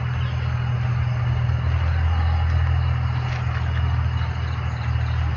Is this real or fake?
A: real